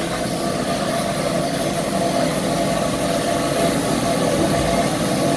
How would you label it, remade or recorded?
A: recorded